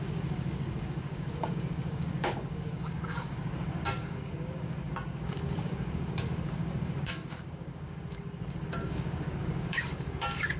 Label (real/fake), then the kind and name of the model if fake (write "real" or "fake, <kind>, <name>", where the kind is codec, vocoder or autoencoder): fake, codec, DAC